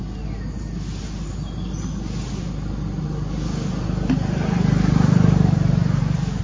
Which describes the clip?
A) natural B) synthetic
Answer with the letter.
A